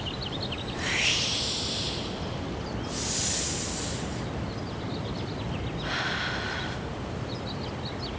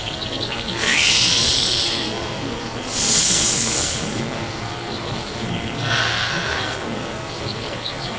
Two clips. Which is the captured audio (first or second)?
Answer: first